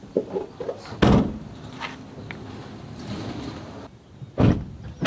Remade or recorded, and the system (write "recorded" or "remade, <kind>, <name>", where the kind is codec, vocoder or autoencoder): recorded